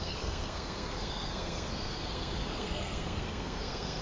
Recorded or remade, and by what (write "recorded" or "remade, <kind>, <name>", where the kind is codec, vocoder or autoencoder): remade, codec, SNAC